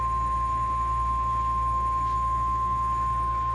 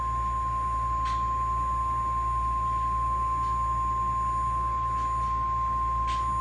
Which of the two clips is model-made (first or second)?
first